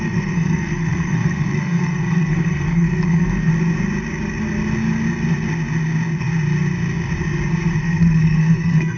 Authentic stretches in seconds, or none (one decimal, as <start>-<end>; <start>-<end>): 3.5-7.8